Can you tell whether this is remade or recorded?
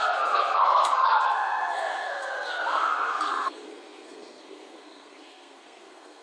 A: remade